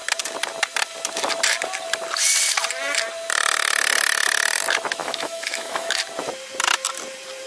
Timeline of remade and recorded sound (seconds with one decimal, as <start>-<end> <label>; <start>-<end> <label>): 0.0-5.0 recorded; 5.0-6.0 remade; 6.0-7.5 recorded